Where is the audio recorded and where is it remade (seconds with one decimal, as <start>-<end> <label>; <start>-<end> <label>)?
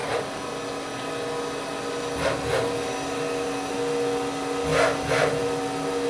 0.0-6.1 recorded